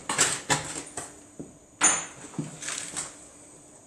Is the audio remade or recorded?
recorded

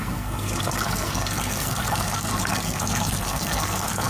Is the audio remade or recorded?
remade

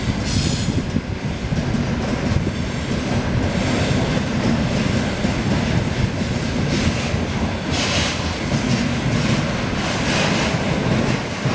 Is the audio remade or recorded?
recorded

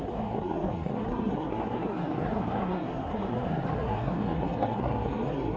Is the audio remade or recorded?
remade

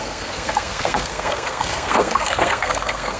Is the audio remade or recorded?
remade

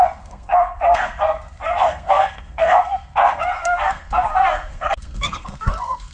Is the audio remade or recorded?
remade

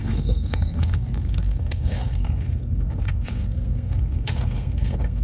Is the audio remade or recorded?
remade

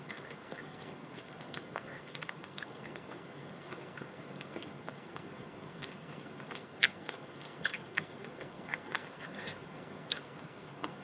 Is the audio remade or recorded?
remade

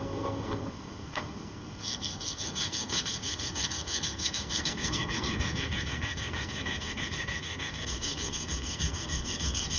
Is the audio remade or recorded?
remade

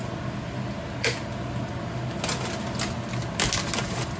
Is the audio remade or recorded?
recorded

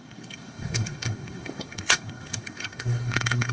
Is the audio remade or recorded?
remade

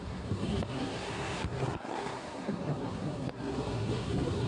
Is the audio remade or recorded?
remade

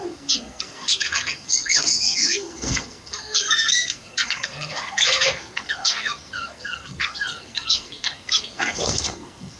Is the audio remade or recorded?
remade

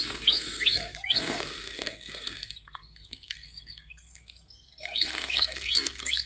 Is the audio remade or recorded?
remade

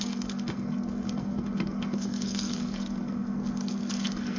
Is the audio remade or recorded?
remade